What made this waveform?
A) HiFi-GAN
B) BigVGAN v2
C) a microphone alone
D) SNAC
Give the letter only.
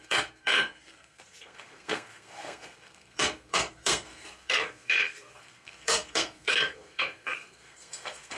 D